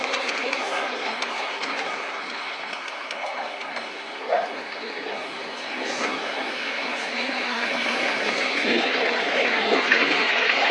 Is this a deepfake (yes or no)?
yes